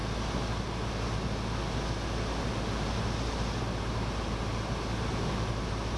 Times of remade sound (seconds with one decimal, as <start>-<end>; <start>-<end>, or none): none